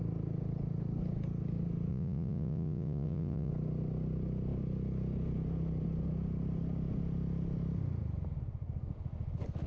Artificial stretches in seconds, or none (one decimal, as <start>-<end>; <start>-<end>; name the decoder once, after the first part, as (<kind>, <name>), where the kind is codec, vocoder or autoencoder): 1.9-3.5 (vocoder, Vocos)